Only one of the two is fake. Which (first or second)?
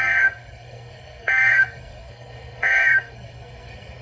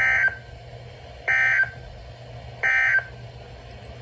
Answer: first